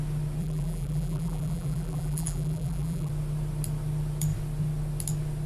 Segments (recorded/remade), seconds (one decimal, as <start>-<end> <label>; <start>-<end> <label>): 0.0-0.4 recorded; 0.4-3.1 remade; 3.1-5.5 recorded